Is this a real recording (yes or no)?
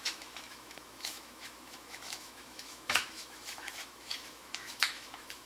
no